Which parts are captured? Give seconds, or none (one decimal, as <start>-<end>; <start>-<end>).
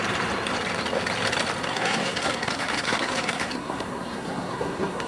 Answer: 0.0-1.7